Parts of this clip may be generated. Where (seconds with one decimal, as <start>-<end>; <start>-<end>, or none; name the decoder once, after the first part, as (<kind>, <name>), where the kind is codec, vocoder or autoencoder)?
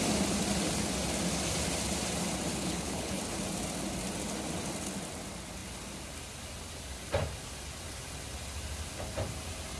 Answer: 2.5-3.2 (codec, HILCodec)